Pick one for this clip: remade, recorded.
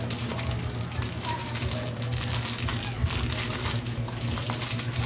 recorded